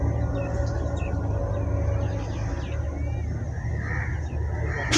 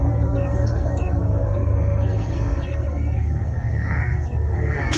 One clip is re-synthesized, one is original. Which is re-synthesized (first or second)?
second